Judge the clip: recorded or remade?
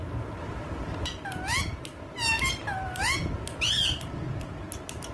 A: recorded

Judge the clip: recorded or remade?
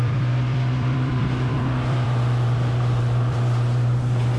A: remade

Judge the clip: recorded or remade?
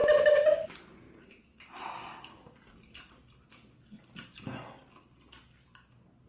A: recorded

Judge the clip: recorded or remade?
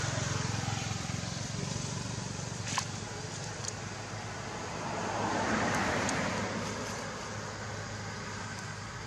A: recorded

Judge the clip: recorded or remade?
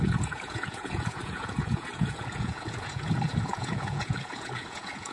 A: remade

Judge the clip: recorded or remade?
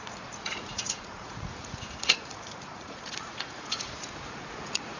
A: remade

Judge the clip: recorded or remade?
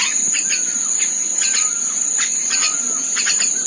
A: recorded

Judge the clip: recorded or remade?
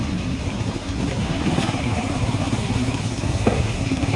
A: remade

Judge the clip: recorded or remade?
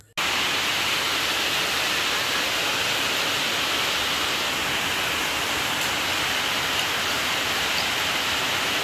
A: recorded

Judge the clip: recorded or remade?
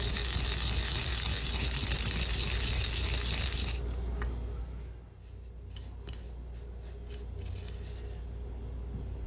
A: recorded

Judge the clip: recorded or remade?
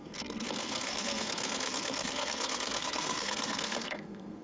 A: remade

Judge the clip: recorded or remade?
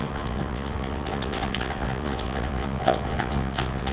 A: remade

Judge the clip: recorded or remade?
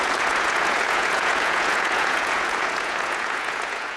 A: remade